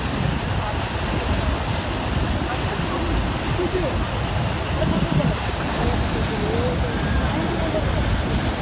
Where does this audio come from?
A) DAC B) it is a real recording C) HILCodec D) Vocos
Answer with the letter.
B